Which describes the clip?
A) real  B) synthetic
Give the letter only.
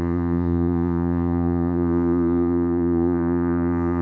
B